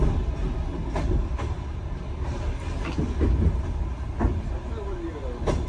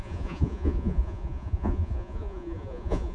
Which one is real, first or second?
first